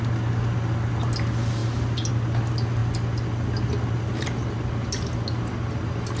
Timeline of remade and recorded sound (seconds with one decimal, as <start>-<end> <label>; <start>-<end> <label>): 0.0-6.2 recorded